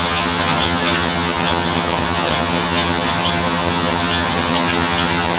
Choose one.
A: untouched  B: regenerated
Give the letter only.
B